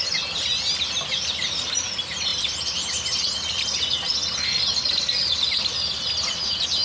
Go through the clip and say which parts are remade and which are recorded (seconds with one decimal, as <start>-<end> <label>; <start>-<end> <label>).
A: 0.0-6.8 recorded